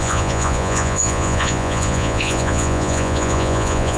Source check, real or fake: fake